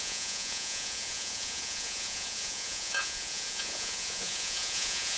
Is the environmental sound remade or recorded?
remade